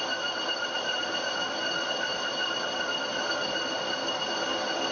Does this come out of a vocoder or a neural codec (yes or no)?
no